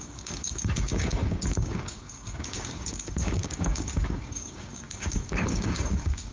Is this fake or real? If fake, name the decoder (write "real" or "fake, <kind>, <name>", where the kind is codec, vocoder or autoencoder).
fake, codec, DAC